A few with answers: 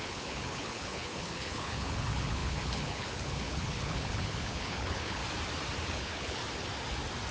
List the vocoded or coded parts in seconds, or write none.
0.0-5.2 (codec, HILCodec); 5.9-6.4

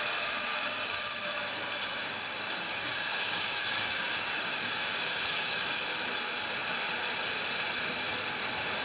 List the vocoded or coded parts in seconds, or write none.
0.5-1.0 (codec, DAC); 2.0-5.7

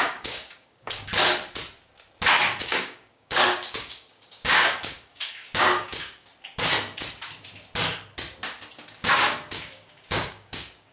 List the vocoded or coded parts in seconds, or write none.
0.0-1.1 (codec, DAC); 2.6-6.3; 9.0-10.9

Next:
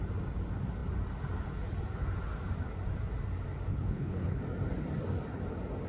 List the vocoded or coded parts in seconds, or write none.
3.7-4.4 (codec, HILCodec)

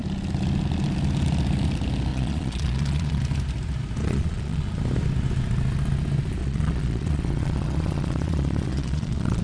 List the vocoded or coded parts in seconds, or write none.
2.1-3.2 (vocoder, Vocos); 4.0-4.7; 6.4-9.4